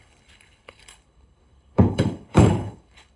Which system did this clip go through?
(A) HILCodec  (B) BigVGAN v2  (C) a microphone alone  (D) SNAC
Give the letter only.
A